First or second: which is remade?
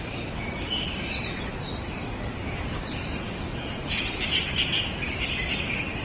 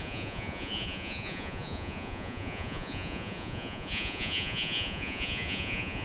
second